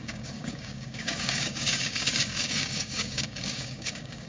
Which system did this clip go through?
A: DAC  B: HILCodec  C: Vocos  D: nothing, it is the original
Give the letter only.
A